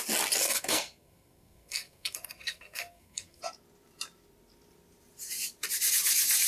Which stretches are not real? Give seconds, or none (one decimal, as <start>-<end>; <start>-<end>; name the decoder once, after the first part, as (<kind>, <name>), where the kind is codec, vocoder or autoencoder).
0.4-3.4 (codec, SNAC)